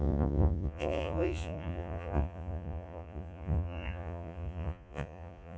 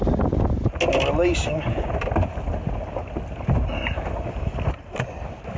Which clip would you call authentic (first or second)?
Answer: second